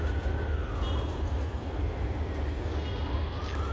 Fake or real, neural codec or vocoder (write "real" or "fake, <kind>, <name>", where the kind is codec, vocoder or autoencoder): real